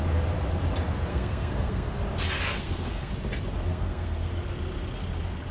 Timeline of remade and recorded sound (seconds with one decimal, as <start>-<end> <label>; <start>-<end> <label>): 0.0-1.1 recorded; 1.1-2.0 remade; 2.0-2.5 recorded; 2.5-3.1 remade; 3.1-3.7 recorded; 3.7-4.3 remade; 4.3-5.5 recorded